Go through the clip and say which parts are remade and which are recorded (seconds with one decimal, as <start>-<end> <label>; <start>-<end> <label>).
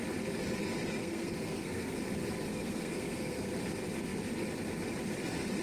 0.0-0.8 recorded; 0.8-2.0 remade; 2.0-2.5 recorded; 2.5-3.5 remade; 3.5-5.6 recorded